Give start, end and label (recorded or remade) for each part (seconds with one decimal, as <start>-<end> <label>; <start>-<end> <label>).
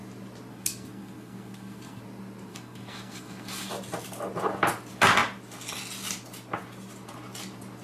0.0-0.5 recorded; 0.5-2.0 remade; 2.0-2.5 recorded; 2.5-3.7 remade; 3.7-7.8 recorded